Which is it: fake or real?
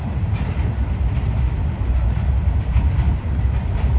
real